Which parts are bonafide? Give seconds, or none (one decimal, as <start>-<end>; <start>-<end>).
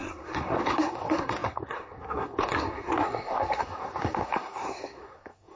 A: none